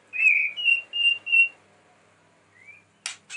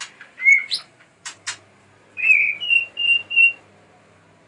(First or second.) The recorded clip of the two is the first